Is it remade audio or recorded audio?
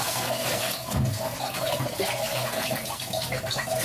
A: remade